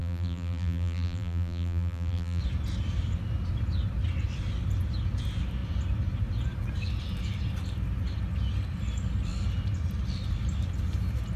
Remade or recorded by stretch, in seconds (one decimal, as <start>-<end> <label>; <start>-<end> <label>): 0.0-2.4 remade; 2.4-11.4 recorded